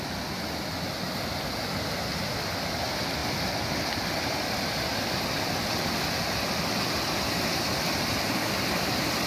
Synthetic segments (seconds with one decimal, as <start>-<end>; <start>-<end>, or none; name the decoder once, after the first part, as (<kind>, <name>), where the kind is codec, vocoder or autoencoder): none